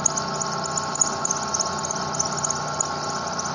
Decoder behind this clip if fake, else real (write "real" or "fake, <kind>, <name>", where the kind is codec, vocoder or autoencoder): real